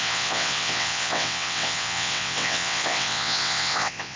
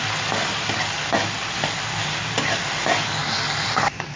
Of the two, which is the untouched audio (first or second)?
second